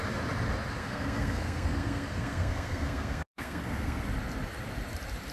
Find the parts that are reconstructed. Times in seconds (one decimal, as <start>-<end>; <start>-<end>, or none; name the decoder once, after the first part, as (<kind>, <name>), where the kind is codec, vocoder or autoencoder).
0.8-4.0 (codec, SNAC)